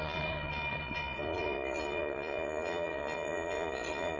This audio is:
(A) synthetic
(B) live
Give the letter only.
A